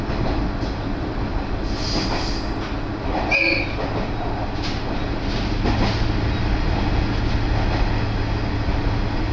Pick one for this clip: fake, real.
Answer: real